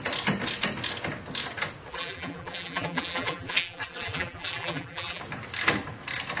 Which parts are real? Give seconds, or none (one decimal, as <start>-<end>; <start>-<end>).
0.0-1.9; 5.2-6.4